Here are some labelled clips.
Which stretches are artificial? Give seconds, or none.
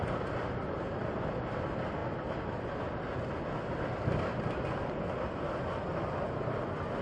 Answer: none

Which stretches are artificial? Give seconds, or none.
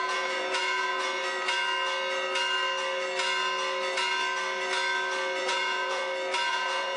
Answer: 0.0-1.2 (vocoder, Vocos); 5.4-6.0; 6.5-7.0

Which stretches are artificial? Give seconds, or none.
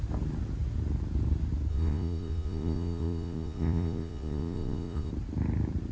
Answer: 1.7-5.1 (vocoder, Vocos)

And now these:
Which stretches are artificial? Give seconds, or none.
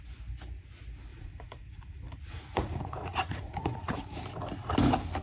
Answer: 1.1-4.2 (vocoder, Vocos)